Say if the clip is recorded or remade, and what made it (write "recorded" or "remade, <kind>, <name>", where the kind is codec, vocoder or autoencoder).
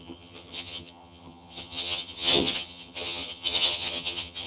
remade, vocoder, HiFi-GAN